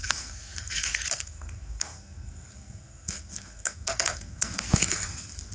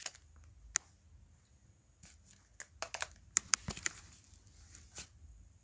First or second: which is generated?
first